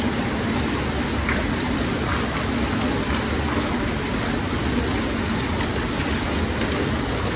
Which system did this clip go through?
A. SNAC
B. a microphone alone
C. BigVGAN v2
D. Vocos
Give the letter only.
B